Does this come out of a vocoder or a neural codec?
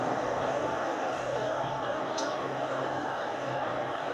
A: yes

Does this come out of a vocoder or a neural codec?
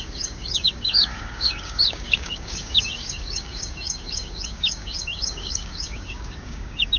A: yes